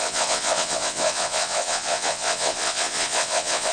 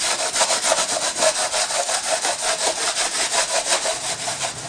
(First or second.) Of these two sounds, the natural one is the second